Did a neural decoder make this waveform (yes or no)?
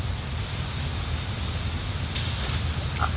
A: no